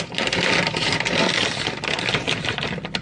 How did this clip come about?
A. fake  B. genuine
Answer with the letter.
B